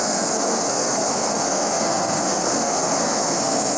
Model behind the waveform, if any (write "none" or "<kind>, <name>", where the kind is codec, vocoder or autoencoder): codec, SNAC